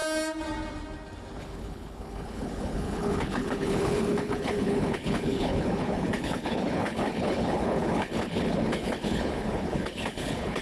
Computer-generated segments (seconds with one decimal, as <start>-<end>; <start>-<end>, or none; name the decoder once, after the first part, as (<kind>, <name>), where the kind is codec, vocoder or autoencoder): 1.4-10.6 (codec, HILCodec)